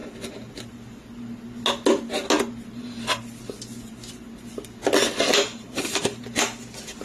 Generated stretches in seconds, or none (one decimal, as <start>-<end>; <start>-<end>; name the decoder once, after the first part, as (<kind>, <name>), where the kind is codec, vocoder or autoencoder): 5.5-6.4 (vocoder, BigVGAN v2)